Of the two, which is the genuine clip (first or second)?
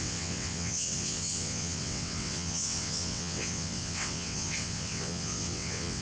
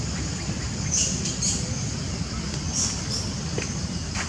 second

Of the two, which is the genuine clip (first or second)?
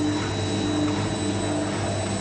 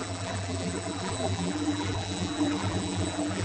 first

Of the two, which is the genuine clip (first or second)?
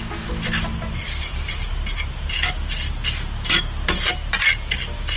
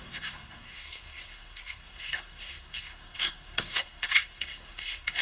first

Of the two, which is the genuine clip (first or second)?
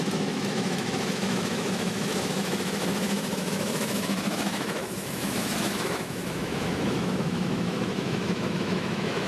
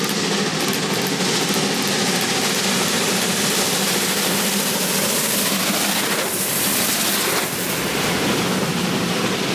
second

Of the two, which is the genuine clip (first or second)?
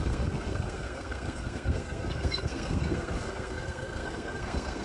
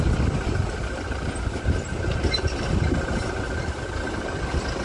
second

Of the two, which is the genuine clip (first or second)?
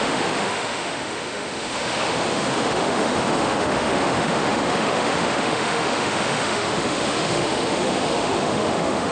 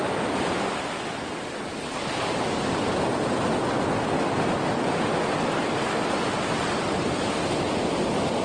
second